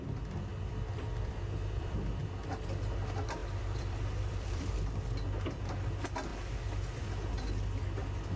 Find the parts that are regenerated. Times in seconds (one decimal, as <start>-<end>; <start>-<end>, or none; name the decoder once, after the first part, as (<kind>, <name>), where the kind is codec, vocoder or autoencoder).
0.5-2.2 (vocoder, BigVGAN v2); 3.4-4.9